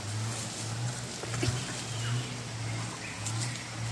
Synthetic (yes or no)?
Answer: no